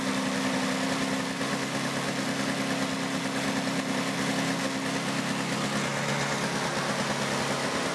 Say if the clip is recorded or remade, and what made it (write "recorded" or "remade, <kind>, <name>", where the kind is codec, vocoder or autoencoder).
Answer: recorded